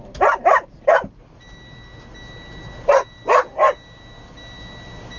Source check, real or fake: real